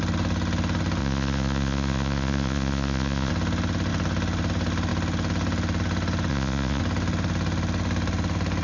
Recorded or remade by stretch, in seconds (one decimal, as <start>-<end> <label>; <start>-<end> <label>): 0.0-1.0 recorded; 1.0-3.3 remade; 3.3-6.3 recorded; 6.3-6.8 remade; 6.8-8.6 recorded

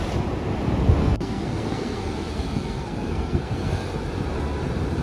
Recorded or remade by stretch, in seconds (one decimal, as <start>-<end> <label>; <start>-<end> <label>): 0.0-1.0 recorded; 1.0-4.0 remade; 4.0-5.0 recorded